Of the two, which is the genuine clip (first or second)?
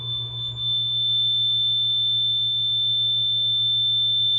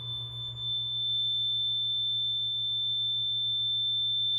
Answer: second